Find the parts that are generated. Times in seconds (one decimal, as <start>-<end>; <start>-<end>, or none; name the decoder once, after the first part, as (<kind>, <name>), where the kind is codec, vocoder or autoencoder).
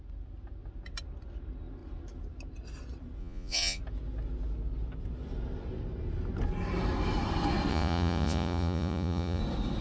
3.2-3.8 (vocoder, Vocos); 7.7-9.4